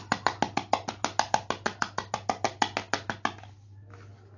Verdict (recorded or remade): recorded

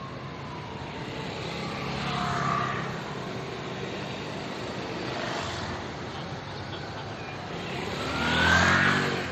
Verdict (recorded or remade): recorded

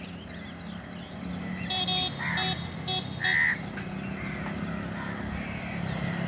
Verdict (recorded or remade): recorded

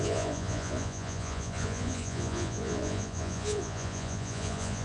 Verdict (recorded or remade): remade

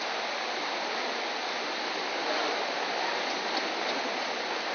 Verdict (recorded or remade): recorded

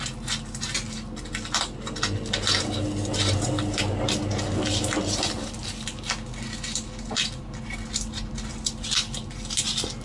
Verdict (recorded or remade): recorded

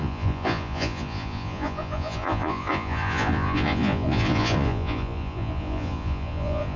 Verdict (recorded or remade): remade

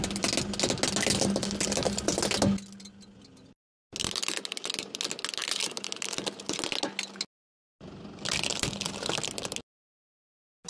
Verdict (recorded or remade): recorded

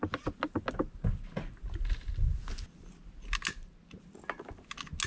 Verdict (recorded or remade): recorded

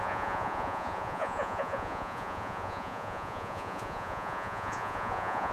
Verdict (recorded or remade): remade